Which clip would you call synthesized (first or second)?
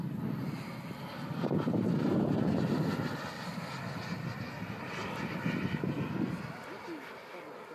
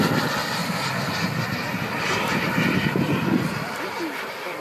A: second